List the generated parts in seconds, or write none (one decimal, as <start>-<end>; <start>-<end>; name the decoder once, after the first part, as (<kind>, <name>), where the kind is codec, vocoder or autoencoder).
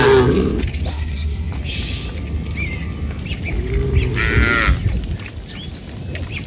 0.9-1.5 (codec, SNAC)